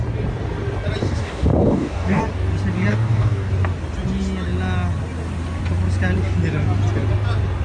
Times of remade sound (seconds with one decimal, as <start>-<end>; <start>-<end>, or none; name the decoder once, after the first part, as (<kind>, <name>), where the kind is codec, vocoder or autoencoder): 1.0-2.2 (codec, DAC); 2.9-3.5